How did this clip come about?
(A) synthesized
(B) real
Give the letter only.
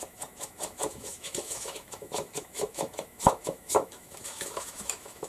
A